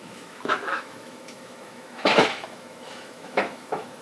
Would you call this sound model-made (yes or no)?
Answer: yes